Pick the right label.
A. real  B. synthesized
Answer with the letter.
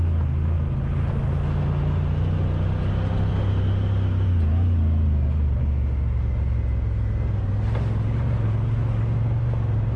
A